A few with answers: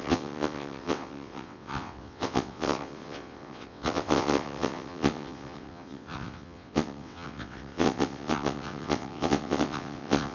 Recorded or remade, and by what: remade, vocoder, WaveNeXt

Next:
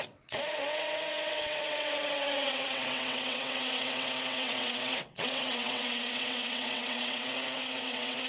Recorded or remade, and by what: remade, vocoder, WaveNeXt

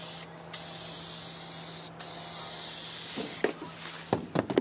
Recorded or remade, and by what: recorded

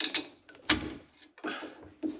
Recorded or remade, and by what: recorded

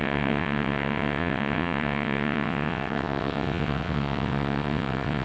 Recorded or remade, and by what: remade, vocoder, WaveNeXt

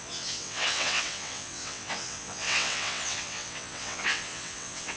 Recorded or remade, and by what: remade, vocoder, WaveNeXt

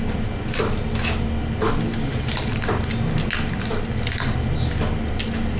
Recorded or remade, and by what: recorded